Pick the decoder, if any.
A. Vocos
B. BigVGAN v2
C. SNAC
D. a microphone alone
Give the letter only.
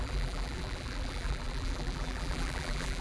B